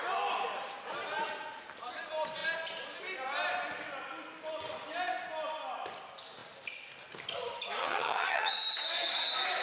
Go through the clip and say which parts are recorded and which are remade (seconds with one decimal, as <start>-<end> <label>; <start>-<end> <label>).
0.0-7.8 recorded; 7.8-8.5 remade; 8.5-9.6 recorded